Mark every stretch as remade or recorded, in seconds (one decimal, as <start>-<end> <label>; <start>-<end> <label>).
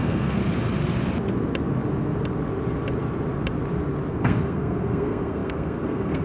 0.0-0.4 remade; 0.4-4.1 recorded; 4.1-6.2 remade